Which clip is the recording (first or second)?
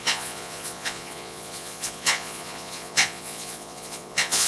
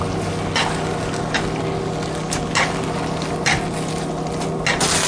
second